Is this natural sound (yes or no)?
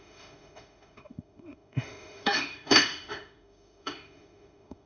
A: no